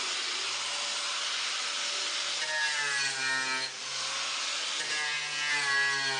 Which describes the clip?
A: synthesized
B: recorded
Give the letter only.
B